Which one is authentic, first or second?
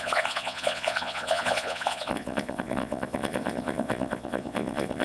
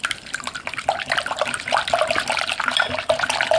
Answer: second